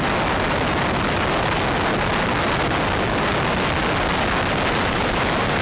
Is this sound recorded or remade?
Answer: recorded